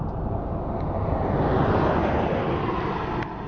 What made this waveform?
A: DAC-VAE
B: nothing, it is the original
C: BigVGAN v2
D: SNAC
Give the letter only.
B